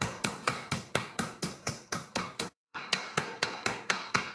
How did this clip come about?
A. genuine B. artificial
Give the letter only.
B